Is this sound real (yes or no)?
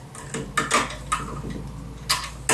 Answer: yes